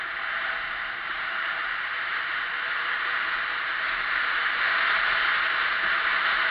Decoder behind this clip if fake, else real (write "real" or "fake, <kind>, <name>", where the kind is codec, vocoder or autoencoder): real